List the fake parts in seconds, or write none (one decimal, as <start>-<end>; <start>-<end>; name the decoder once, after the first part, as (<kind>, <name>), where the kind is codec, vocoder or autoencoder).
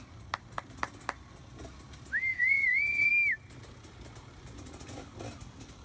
2.3-3.1 (vocoder, Vocos)